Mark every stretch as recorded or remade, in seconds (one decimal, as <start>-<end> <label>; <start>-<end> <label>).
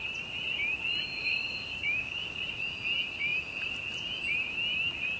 0.0-1.2 recorded; 1.2-2.4 remade; 2.4-5.2 recorded